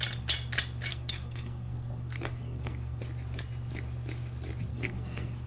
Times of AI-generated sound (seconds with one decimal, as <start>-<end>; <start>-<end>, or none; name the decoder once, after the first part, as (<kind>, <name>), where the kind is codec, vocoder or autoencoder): 0.9-3.0 (codec, SNAC); 4.7-5.5